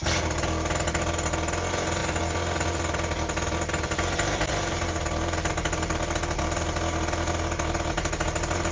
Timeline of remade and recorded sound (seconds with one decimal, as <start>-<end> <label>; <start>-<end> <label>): 0.0-8.7 recorded